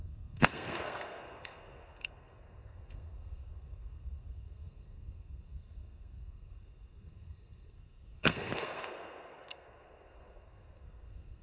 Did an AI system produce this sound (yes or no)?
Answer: yes